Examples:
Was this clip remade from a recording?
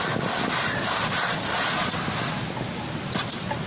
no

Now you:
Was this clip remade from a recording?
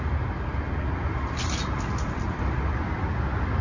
no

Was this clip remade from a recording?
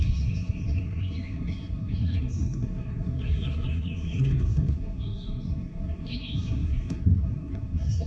yes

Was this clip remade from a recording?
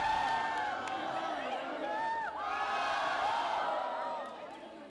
no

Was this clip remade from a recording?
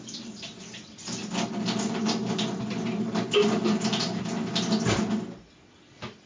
no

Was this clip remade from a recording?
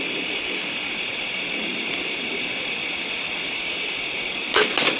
no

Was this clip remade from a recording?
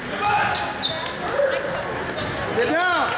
no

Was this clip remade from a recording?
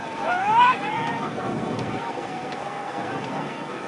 yes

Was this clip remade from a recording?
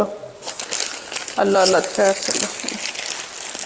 no